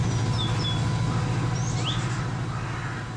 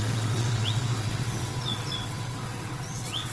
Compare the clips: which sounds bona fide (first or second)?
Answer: first